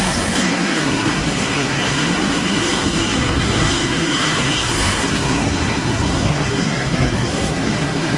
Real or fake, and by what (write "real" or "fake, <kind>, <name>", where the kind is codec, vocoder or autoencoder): fake, codec, SNAC